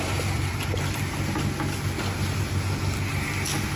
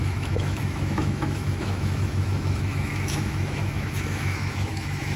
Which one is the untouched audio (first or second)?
first